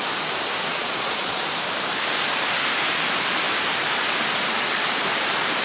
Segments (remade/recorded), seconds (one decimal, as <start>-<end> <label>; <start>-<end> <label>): 0.0-0.7 recorded; 0.7-1.4 remade; 1.4-5.6 recorded